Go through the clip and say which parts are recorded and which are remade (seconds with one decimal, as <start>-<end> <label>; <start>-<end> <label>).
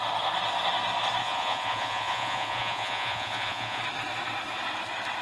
0.0-1.2 recorded; 1.2-3.8 remade; 3.8-5.2 recorded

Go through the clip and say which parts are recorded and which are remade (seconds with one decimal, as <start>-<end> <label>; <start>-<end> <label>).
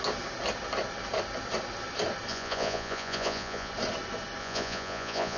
0.0-2.3 recorded; 2.3-3.7 remade; 3.7-4.4 recorded; 4.4-5.4 remade